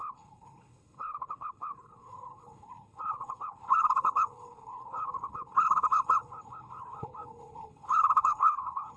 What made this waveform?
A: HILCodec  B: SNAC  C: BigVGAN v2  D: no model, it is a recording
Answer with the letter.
A